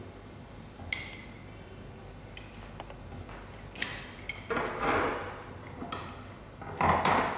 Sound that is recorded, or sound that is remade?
recorded